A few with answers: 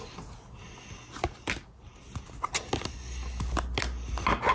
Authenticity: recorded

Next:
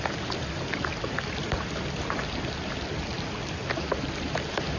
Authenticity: recorded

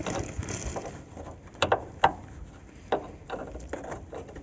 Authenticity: recorded